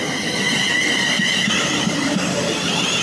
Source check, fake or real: real